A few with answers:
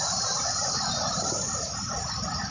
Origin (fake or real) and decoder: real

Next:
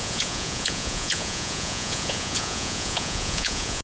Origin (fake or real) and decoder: fake, vocoder, Vocos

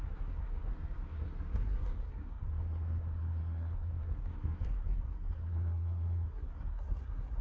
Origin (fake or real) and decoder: fake, codec, SNAC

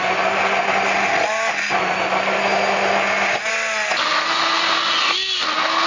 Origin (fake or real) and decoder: real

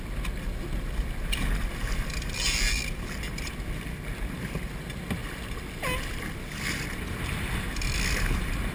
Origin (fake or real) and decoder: real